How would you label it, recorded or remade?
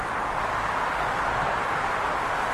recorded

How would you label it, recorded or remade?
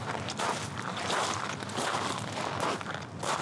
recorded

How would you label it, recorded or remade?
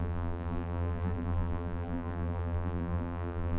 remade